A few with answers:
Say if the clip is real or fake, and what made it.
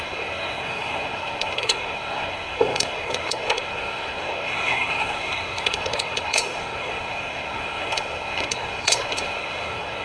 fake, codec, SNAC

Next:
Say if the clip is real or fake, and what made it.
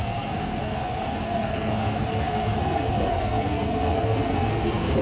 fake, codec, SNAC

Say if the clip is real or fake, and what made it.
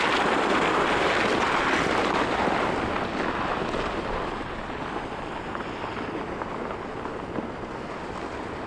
real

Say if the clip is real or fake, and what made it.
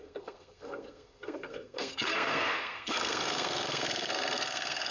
fake, codec, SNAC